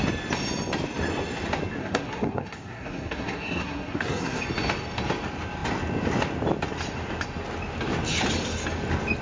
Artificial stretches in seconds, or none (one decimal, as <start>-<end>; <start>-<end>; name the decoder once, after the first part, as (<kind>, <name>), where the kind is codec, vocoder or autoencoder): 1.8-4.4 (codec, SNAC)